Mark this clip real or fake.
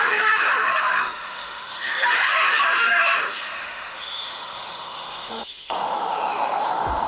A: fake